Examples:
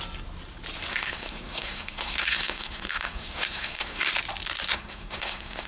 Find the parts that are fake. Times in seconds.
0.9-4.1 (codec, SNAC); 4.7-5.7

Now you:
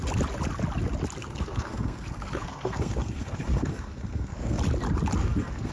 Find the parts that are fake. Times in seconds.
1.2-4.6 (codec, SNAC); 5.2-5.7

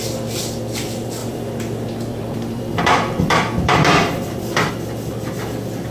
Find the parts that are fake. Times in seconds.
1.2-4.7 (vocoder, BigVGAN v2)

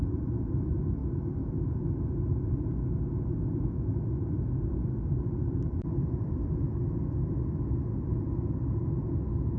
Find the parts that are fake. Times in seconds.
5.7-6.6 (vocoder, BigVGAN v2)

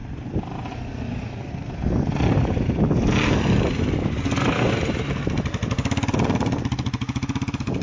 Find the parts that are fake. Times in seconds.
none

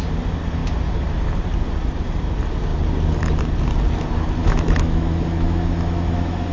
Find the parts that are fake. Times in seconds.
4.4-6.5 (autoencoder, DAC-VAE)

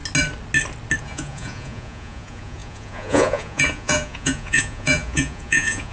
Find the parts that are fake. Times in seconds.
1.0-5.9 (vocoder, Vocos)